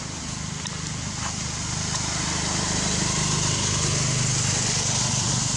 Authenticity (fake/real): real